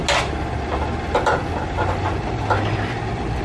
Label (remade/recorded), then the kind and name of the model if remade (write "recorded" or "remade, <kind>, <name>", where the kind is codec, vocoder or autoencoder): recorded